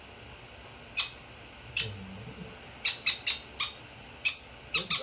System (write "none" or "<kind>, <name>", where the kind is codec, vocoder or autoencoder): none